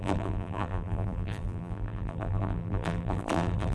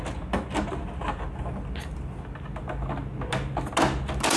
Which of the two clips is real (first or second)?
second